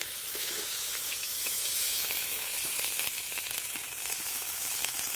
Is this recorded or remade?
remade